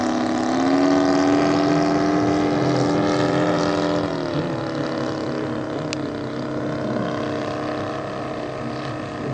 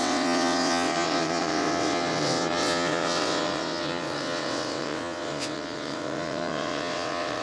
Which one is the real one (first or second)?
first